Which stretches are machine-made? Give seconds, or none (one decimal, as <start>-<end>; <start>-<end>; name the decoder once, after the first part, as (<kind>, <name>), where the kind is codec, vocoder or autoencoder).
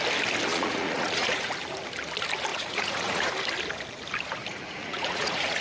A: 0.5-1.5 (vocoder, Vocos); 2.5-3.3; 4.4-5.6